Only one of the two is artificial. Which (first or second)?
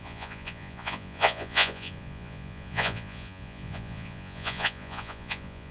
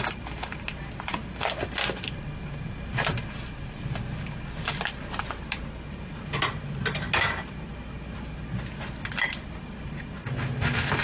first